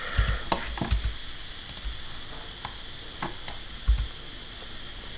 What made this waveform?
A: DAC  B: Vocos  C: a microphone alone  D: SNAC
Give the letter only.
C